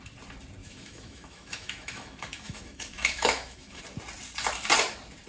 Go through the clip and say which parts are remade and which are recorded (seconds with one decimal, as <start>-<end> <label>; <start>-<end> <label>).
0.0-0.6 recorded; 0.6-3.8 remade; 3.8-5.3 recorded